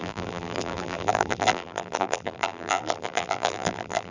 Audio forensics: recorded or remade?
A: remade